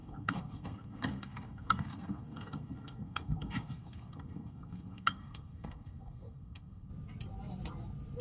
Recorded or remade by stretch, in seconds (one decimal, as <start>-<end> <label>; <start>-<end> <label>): 0.0-6.9 remade; 6.9-8.2 recorded